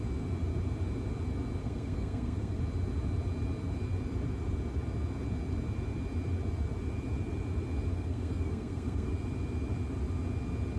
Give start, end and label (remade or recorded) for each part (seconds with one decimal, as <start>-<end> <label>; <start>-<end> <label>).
0.0-1.6 recorded; 1.6-2.6 remade; 2.6-7.9 recorded; 7.9-9.1 remade; 9.1-10.8 recorded